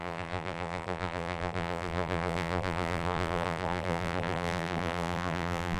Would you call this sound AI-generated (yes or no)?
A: yes